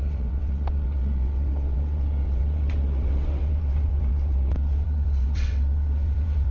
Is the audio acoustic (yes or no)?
no